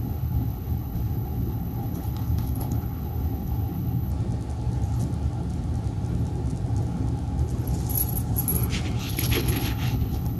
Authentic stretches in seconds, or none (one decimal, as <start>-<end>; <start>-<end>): 4.1-9.0